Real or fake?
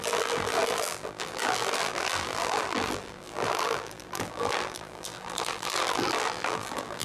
fake